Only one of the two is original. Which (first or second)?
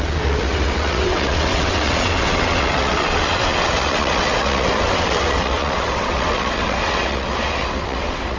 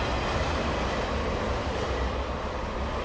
second